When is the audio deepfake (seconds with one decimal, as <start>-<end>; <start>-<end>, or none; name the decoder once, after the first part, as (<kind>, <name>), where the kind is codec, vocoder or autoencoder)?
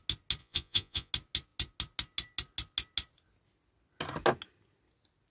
0.4-1.1 (vocoder, Vocos)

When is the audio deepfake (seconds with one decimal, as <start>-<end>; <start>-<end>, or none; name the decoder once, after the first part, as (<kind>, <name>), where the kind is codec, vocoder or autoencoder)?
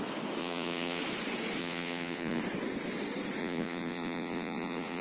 0.4-1.0 (vocoder, Vocos); 1.6-2.4; 3.4-5.0